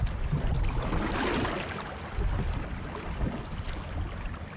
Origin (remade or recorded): recorded